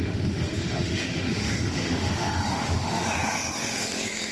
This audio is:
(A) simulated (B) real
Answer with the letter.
A